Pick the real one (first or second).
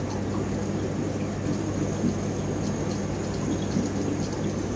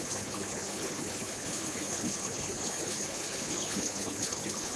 first